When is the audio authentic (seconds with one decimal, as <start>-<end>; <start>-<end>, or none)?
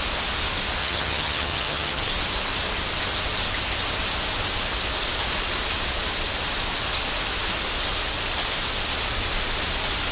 0.0-0.8; 2.0-10.1